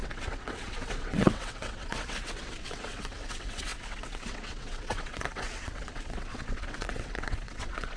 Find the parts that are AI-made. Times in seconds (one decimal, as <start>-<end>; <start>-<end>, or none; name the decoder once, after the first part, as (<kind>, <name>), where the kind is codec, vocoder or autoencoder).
0.0-8.0 (vocoder, WaveNeXt)